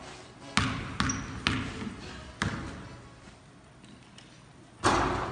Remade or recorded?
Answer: recorded